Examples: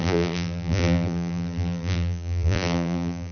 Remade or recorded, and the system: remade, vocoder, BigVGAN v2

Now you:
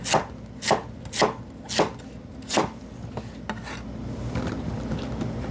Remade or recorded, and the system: recorded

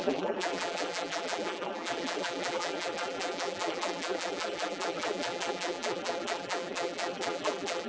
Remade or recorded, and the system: remade, vocoder, BigVGAN v2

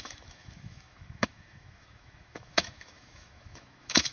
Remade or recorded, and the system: remade, autoencoder, DAC-VAE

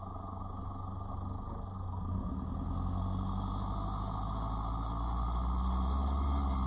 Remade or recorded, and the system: recorded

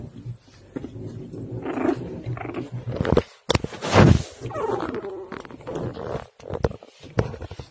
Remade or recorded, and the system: recorded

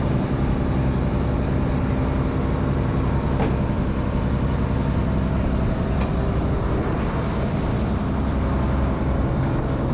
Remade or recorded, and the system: remade, vocoder, BigVGAN v2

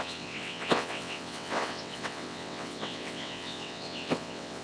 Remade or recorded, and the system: remade, vocoder, WaveNeXt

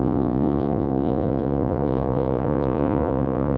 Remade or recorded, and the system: remade, vocoder, Vocos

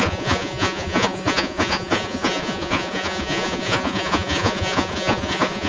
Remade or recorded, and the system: remade, vocoder, Vocos